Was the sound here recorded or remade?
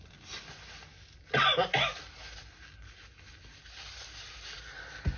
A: recorded